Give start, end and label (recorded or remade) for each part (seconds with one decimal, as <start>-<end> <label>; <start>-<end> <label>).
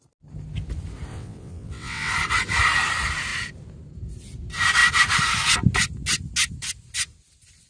0.0-1.1 recorded; 1.1-2.1 remade; 2.1-7.7 recorded